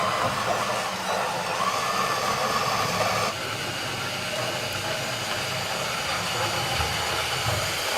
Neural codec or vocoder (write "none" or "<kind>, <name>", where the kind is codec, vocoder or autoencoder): none